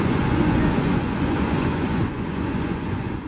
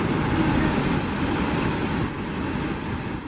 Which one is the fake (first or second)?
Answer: first